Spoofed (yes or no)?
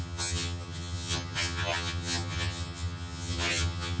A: yes